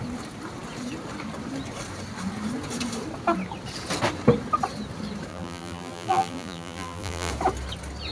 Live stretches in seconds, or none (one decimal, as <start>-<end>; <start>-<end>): 0.0-5.3; 7.3-8.1